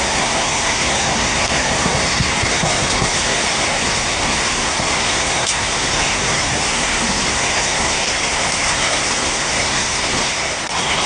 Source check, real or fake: fake